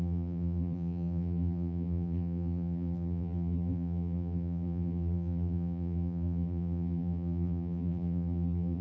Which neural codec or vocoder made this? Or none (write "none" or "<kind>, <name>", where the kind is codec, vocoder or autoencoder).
vocoder, BigVGAN v2